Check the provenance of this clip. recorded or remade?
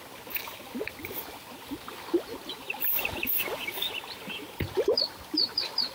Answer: recorded